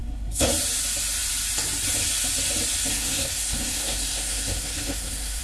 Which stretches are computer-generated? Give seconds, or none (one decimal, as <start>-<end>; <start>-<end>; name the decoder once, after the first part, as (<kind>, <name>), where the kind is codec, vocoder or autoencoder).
0.0-0.5 (codec, SNAC); 2.9-5.4